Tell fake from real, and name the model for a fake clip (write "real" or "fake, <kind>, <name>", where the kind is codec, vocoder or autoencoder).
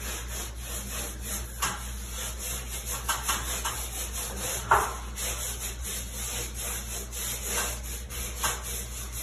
real